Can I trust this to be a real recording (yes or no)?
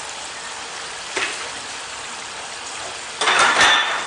yes